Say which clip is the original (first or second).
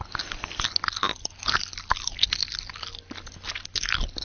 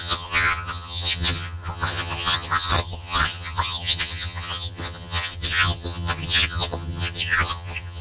first